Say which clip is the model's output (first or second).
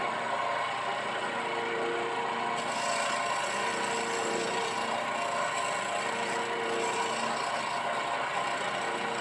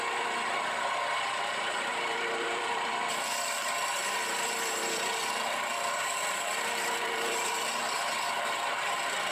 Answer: second